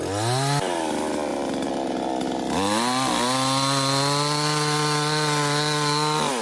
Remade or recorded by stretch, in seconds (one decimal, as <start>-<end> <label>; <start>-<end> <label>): 0.0-1.3 recorded; 1.3-2.1 remade; 2.1-6.4 recorded